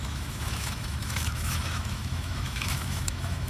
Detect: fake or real fake